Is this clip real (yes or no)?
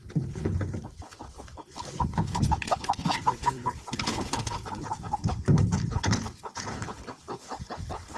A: no